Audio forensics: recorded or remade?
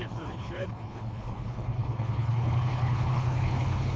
remade